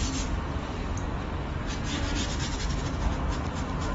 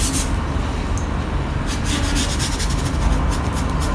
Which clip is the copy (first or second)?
first